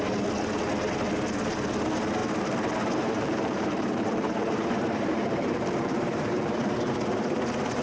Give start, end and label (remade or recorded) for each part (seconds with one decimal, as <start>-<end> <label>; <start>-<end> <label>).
0.0-2.2 recorded; 2.2-6.9 remade; 6.9-7.8 recorded